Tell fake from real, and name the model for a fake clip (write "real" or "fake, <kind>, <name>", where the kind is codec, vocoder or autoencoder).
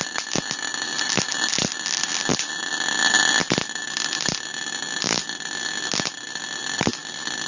real